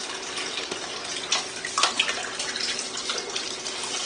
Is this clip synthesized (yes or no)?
no